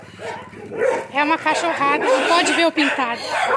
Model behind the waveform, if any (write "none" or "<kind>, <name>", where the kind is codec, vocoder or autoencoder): none